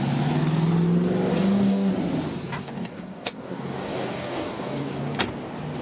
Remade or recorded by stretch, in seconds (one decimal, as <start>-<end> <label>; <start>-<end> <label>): 0.0-1.3 recorded; 1.3-1.9 remade; 1.9-2.6 recorded; 2.6-5.0 remade; 5.0-5.8 recorded